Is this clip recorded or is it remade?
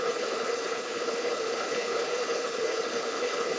remade